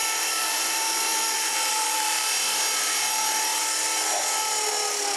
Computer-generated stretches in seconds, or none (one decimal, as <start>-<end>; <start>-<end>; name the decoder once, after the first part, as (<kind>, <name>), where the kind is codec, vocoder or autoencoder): 0.0-3.1 (vocoder, BigVGAN v2)